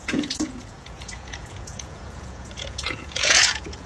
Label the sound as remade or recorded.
remade